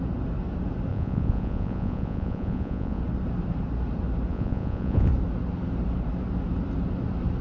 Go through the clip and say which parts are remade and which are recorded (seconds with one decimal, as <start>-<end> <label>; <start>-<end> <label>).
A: 0.0-0.9 recorded; 0.9-3.0 remade; 3.0-4.3 recorded; 4.3-5.1 remade; 5.1-7.4 recorded